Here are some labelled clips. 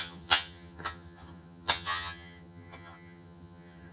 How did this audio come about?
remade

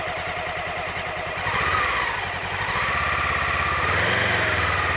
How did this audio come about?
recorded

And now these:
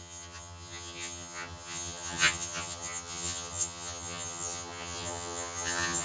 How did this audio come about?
remade